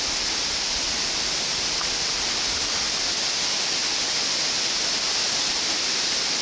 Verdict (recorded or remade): recorded